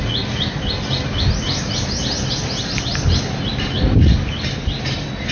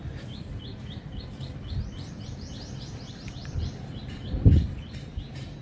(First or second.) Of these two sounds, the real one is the first